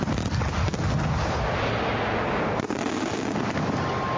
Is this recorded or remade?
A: recorded